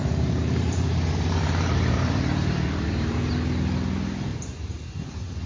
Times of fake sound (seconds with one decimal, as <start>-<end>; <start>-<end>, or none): 0.0-3.3; 4.3-5.1